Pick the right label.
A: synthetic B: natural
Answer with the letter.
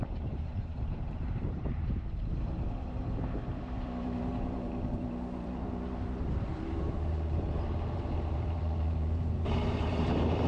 A